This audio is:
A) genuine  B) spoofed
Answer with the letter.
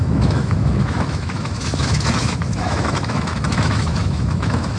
B